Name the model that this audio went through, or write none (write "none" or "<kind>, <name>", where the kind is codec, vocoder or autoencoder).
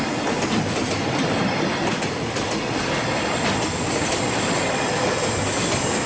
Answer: none